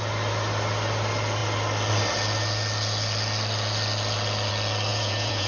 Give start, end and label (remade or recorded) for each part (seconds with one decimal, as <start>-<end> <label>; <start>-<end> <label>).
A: 0.0-4.9 recorded; 4.9-5.5 remade